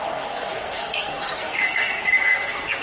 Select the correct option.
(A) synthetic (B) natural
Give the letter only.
A